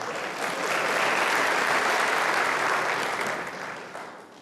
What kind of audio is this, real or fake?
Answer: real